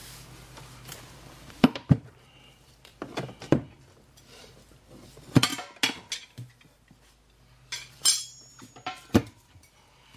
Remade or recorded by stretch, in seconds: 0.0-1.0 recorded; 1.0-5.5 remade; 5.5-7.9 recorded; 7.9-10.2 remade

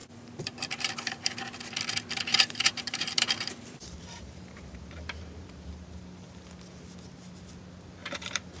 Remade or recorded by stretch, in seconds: 0.0-1.3 remade; 1.3-2.3 recorded; 2.3-5.7 remade; 5.7-8.0 recorded; 8.0-8.6 remade